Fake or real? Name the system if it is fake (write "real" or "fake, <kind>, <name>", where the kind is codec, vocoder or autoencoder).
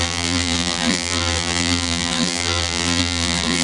fake, vocoder, BigVGAN v2